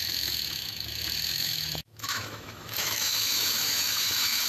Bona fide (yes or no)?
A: no